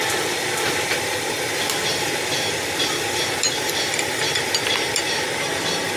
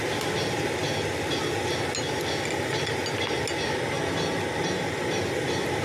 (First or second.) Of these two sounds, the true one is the second